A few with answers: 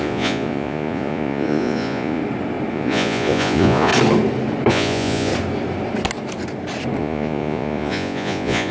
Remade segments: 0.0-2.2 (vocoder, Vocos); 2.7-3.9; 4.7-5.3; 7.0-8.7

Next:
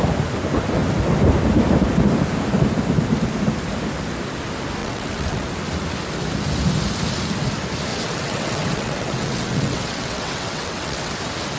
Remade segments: 4.8-5.5 (vocoder, WaveNeXt); 7.9-11.1